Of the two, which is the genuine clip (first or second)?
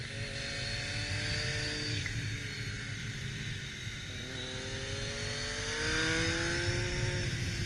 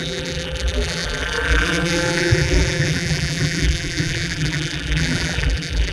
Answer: first